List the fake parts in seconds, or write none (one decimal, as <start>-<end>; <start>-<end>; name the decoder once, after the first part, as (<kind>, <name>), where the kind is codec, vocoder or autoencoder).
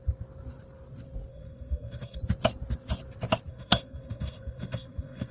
1.3-2.2 (codec, SNAC); 3.5-5.3